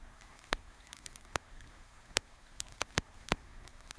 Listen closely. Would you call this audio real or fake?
fake